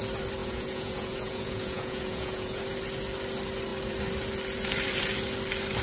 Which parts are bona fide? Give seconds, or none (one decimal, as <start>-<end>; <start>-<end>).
0.0-0.4; 2.6-5.8